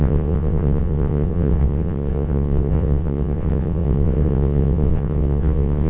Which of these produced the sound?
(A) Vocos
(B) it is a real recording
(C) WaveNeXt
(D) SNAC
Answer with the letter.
C